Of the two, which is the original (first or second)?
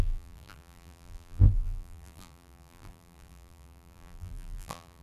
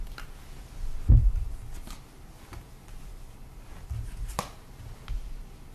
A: second